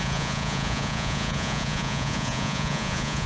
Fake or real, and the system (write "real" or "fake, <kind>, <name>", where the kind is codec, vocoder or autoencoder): fake, vocoder, Vocos